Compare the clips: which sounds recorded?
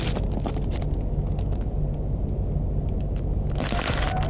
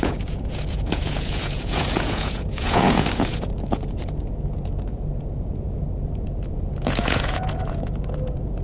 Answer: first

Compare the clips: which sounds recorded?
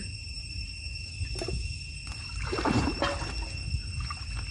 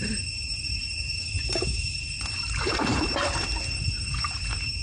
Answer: first